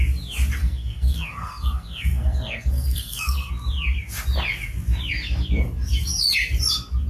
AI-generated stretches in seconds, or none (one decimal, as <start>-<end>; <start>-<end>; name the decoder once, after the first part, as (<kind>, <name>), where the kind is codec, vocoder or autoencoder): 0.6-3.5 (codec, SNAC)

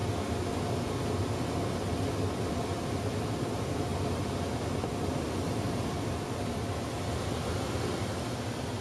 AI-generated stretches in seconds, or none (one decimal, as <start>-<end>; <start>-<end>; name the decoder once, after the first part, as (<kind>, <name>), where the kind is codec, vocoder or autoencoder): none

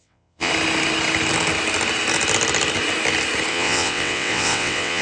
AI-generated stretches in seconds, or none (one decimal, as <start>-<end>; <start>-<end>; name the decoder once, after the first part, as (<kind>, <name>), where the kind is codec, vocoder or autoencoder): 0.0-0.5 (vocoder, WaveNeXt); 3.5-5.0

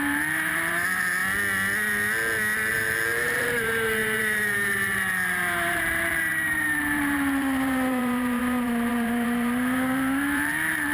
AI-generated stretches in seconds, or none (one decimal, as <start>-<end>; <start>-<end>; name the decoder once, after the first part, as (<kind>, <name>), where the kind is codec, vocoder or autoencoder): 0.0-1.2 (vocoder, BigVGAN v2); 2.7-10.9

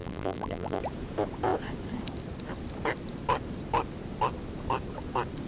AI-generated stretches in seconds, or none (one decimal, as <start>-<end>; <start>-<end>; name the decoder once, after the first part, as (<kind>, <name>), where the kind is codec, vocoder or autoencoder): 0.0-0.8 (vocoder, BigVGAN v2)